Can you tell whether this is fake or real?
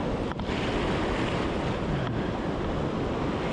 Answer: real